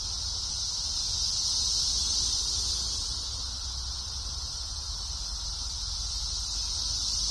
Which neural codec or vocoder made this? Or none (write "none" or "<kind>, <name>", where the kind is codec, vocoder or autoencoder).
none